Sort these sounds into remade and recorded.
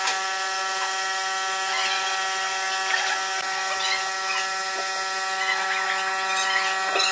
recorded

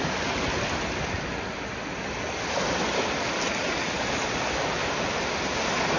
recorded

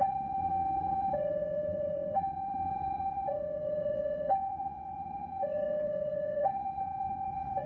remade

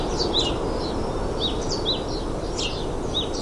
recorded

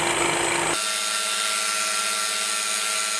recorded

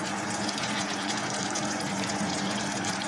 remade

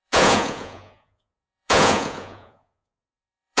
remade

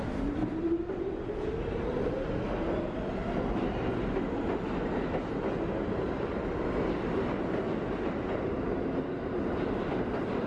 recorded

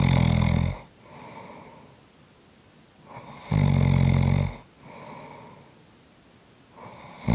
recorded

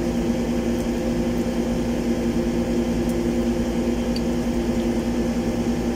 recorded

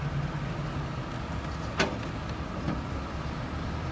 recorded